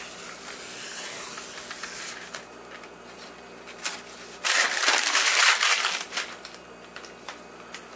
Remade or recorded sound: recorded